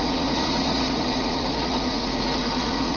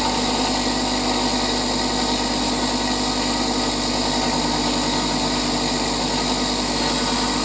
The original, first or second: second